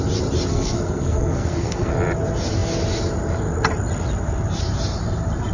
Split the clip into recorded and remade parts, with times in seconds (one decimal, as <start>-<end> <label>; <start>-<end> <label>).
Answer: 0.0-0.5 recorded; 0.5-1.9 remade; 1.9-5.5 recorded